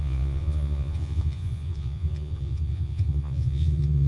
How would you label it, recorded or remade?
remade